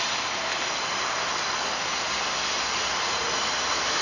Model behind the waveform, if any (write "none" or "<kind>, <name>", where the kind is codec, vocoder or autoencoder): none